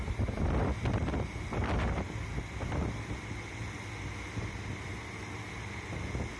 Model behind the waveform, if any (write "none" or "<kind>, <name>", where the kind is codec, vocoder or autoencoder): none